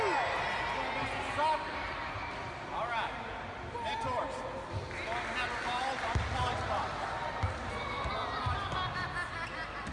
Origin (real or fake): real